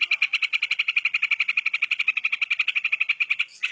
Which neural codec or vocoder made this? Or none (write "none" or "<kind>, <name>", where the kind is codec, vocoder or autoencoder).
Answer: none